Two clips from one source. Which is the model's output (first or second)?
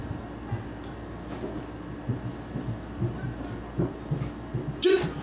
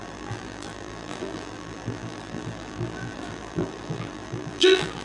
second